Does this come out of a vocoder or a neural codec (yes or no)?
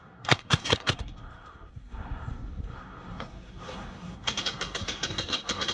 yes